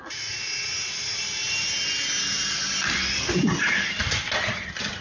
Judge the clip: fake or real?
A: real